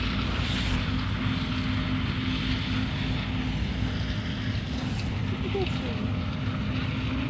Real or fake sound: real